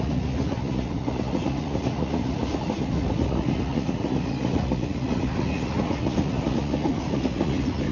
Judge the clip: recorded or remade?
remade